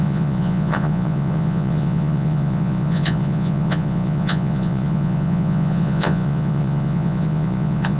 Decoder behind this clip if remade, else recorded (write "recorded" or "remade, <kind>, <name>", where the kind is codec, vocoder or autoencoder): remade, vocoder, Vocos